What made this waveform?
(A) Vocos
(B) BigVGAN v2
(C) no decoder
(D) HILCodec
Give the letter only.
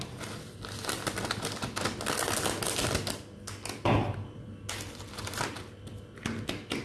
C